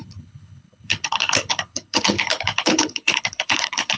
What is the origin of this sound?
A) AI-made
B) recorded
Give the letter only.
A